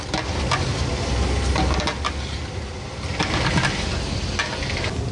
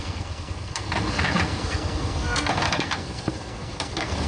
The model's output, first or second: second